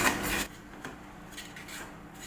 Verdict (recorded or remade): recorded